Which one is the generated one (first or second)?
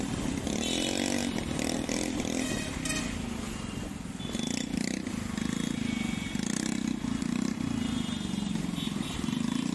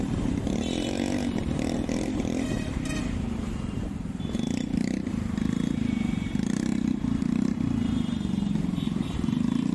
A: second